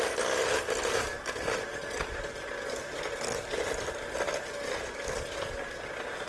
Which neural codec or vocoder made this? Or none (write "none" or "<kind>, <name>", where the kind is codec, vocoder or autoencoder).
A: none